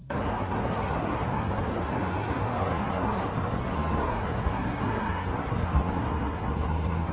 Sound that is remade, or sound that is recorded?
remade